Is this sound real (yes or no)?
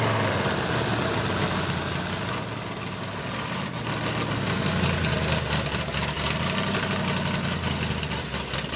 yes